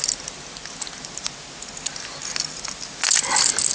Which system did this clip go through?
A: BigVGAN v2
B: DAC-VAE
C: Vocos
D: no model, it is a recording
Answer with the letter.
D